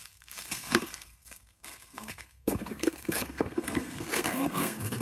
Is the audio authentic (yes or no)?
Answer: no